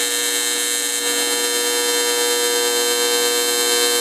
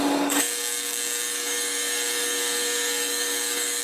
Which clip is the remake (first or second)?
second